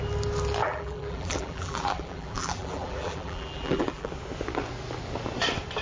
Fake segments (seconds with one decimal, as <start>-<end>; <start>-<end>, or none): 0.6-4.1